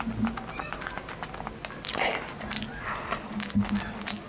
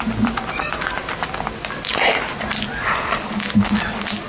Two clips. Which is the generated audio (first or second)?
second